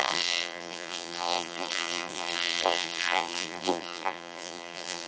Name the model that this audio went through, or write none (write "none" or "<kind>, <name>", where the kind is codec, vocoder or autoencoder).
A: vocoder, BigVGAN v2